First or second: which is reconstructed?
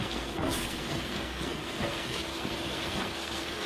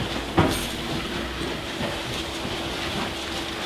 first